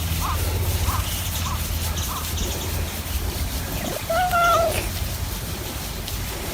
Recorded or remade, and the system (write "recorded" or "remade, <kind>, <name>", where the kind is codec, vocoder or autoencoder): recorded